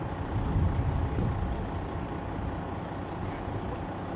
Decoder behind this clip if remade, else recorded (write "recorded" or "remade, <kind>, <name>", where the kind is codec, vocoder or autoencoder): recorded